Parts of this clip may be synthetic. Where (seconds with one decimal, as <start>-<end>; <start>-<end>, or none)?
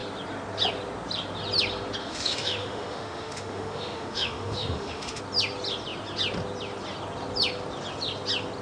2.0-5.2